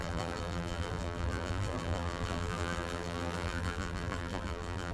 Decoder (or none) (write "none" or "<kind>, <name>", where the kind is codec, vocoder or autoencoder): vocoder, BigVGAN v2